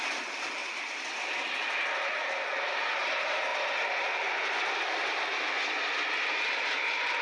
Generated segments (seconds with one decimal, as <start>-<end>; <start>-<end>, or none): none